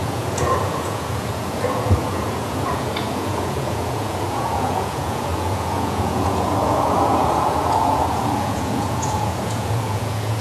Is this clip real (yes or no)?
no